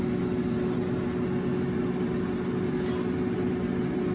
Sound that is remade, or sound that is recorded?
recorded